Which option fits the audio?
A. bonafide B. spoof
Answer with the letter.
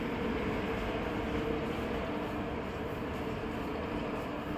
A